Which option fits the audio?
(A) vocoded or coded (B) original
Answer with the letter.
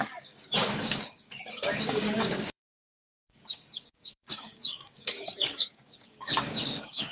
A